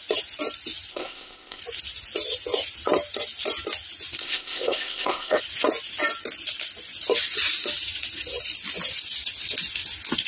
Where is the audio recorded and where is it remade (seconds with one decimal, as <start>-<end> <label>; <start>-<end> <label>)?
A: 0.0-0.9 recorded; 0.9-1.6 remade; 1.6-4.2 recorded; 4.2-5.4 remade; 5.4-10.3 recorded